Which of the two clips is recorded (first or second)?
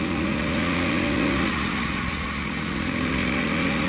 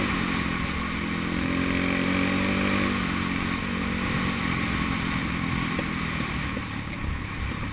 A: second